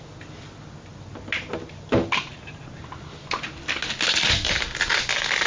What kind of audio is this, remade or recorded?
recorded